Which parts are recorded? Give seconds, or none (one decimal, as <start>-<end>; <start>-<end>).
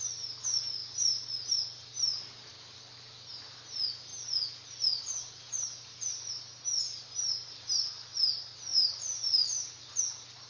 0.0-8.7; 10.0-10.5